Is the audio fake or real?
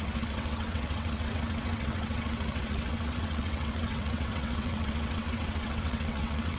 fake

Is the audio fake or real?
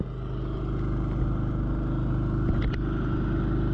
real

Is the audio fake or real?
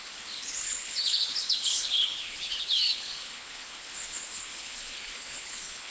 fake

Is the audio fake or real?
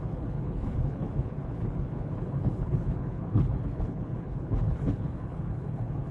fake